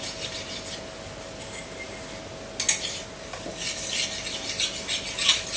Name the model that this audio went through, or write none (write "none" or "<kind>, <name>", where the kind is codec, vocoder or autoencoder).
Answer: none